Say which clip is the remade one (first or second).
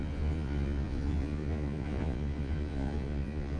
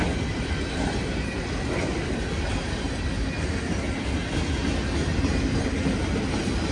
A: first